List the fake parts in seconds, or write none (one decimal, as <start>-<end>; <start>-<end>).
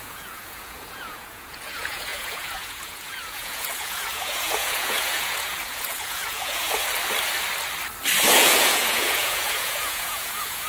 0.0-6.8; 8.2-10.7